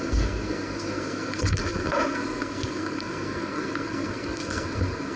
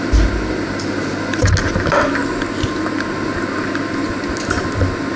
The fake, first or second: first